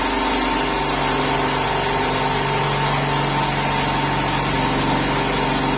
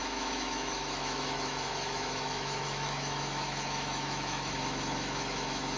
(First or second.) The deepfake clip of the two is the second